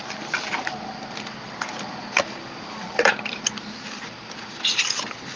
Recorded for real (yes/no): yes